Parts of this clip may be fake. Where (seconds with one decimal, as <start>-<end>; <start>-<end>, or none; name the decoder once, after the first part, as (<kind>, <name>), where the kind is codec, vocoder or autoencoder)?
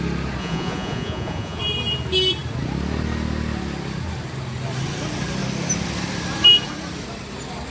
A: 0.4-1.6 (vocoder, Vocos)